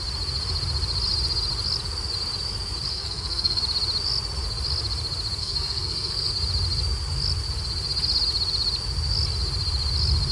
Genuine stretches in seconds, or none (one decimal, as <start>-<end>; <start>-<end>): 0.0-2.9; 3.6-5.4; 6.3-10.3